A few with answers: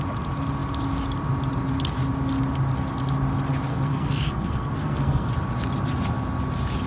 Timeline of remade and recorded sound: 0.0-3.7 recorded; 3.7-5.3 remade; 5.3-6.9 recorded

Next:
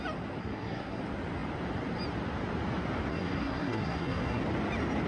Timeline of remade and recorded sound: 0.0-0.4 recorded; 0.4-1.0 remade; 1.0-3.1 recorded; 3.1-4.4 remade; 4.4-5.1 recorded

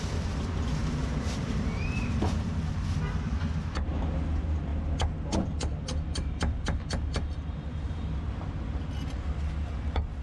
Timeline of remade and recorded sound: 0.0-0.8 recorded; 0.8-2.6 remade; 2.6-10.2 recorded